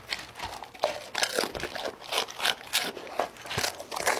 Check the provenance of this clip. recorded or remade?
recorded